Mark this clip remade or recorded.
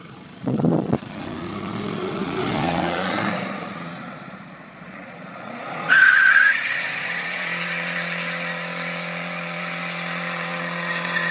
remade